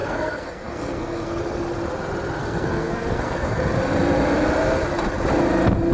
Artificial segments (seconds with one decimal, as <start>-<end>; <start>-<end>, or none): 0.0-1.4; 2.4-3.6